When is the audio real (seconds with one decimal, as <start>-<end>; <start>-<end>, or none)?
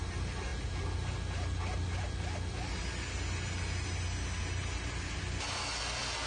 0.0-6.3